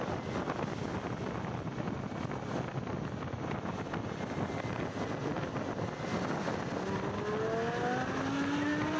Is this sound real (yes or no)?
yes